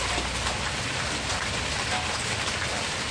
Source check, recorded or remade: recorded